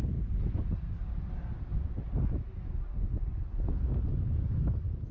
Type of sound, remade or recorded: recorded